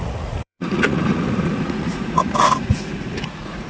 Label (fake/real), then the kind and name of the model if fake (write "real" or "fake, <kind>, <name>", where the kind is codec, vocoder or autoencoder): fake, vocoder, Vocos